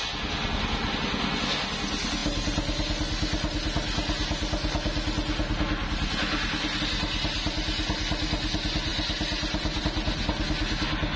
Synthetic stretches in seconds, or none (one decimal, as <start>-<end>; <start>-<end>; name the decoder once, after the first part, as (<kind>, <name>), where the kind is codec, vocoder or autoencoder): none